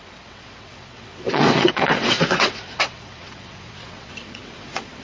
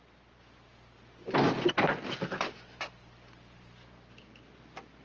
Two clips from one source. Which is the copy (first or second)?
first